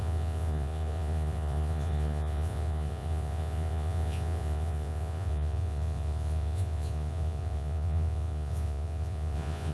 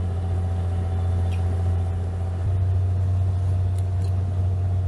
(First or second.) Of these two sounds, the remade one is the first